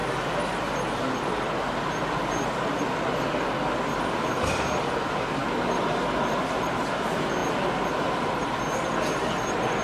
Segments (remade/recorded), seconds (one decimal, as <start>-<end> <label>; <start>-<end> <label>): 0.0-9.8 recorded